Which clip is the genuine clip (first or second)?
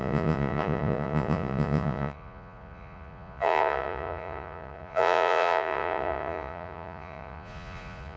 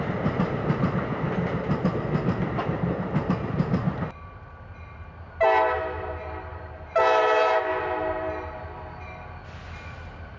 second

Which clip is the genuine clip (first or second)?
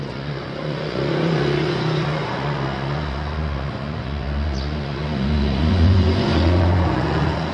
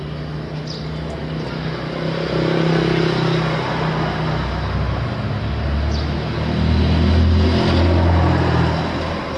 second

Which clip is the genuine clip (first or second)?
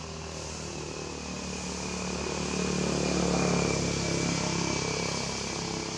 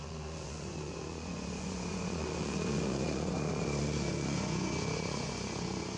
first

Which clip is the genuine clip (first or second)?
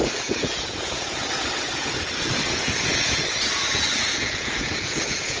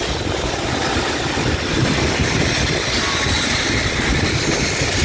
second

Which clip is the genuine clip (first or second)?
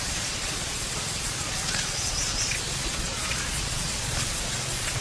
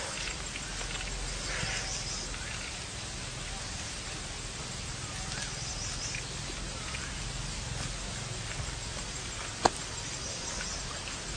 second